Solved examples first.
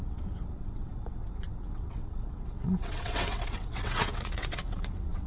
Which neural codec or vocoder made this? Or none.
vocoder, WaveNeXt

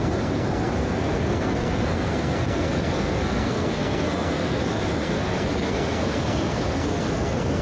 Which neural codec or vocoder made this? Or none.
codec, SNAC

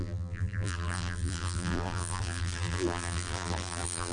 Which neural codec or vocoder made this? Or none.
vocoder, BigVGAN v2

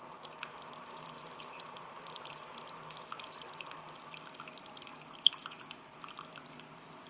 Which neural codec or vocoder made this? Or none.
vocoder, BigVGAN v2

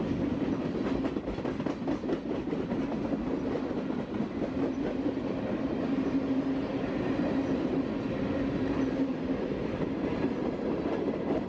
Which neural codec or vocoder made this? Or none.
none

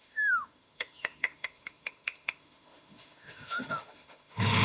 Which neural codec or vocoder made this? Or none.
autoencoder, DAC-VAE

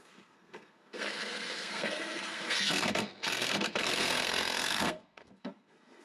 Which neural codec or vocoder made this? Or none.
codec, SNAC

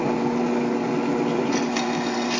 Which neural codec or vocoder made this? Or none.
none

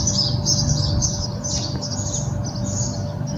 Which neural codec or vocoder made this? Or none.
none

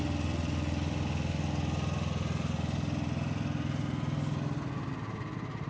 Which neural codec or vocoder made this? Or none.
none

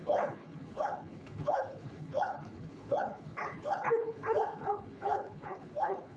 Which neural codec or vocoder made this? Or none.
codec, HILCodec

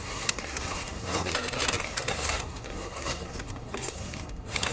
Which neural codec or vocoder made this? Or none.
codec, SNAC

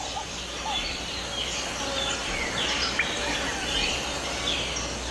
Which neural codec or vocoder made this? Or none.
none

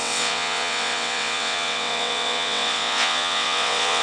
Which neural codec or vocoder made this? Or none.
vocoder, WaveNeXt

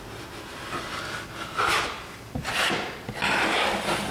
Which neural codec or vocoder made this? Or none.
none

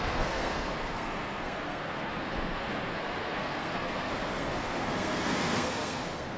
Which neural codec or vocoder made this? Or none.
codec, SNAC